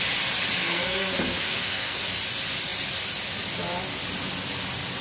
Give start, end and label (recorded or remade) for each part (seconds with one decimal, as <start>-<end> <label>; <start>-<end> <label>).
0.0-0.6 recorded; 0.6-2.1 remade; 2.1-5.0 recorded